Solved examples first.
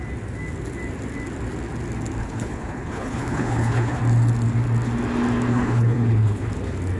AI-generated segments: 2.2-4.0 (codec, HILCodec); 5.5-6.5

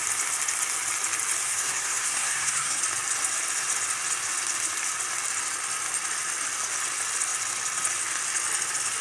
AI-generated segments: 1.4-2.8 (codec, SNAC)